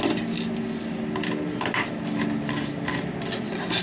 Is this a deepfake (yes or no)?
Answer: no